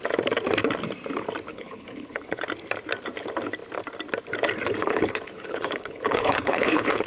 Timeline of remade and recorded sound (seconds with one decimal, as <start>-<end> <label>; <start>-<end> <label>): 0.0-1.5 recorded; 1.5-2.4 remade; 2.4-4.8 recorded; 4.8-7.1 remade